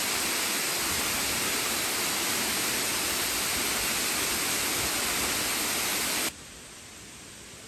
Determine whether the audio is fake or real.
real